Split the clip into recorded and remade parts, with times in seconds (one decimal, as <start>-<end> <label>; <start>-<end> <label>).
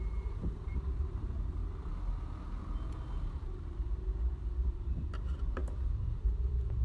0.0-1.6 remade; 1.6-3.2 recorded; 3.2-6.8 remade